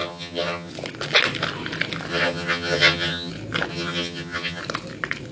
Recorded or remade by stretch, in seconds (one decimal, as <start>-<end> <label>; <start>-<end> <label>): 0.0-0.7 remade; 0.7-2.1 recorded; 2.1-3.3 remade; 3.3-3.7 recorded; 3.7-4.6 remade; 4.6-5.3 recorded